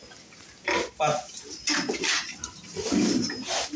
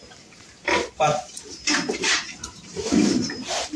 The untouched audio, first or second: first